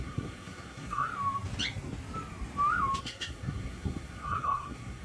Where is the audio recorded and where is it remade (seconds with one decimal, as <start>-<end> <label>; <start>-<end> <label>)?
0.0-1.1 remade; 1.1-3.0 recorded; 3.0-5.0 remade